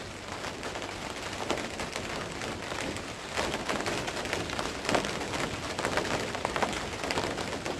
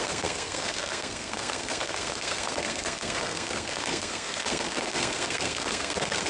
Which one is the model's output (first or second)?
second